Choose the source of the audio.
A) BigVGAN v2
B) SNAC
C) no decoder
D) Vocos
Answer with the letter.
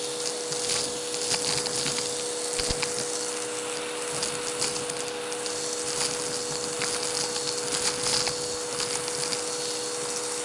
C